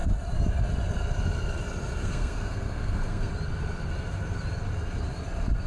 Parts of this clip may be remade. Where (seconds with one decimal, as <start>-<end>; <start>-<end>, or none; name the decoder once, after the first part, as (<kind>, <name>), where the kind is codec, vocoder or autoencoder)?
2.0-3.3 (codec, SNAC)